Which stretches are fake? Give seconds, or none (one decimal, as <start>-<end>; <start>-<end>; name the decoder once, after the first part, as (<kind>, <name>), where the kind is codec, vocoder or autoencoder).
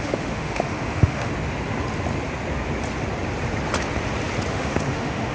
0.0-1.3 (autoencoder, DAC-VAE); 4.5-5.3